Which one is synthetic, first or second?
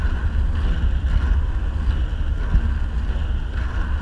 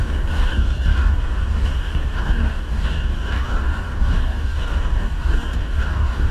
second